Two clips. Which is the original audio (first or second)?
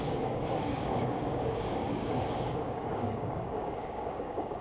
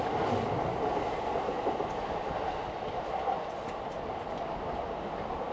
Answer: second